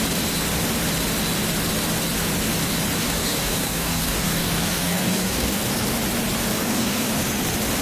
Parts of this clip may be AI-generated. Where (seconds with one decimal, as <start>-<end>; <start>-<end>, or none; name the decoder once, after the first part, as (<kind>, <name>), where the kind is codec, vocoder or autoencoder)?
3.0-5.6 (codec, DAC); 6.5-7.1